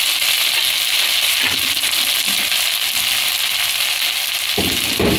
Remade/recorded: recorded